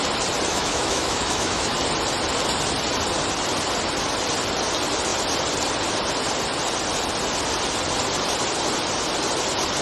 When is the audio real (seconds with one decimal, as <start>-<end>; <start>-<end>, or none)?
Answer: 0.0-0.5; 1.7-9.8